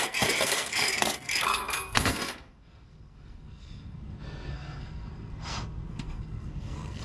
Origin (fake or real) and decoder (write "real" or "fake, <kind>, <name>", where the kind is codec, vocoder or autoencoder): fake, codec, SNAC